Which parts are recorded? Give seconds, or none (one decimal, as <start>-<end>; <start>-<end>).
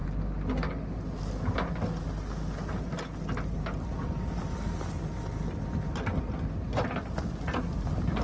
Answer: 0.0-8.2